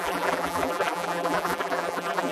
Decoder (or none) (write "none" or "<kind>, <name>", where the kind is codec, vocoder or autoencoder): vocoder, BigVGAN v2